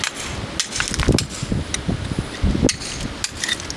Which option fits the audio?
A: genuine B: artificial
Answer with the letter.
A